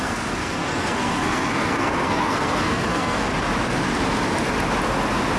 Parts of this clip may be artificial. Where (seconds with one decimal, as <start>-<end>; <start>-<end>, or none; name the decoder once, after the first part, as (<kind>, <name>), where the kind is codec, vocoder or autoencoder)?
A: 0.0-3.3 (codec, SNAC)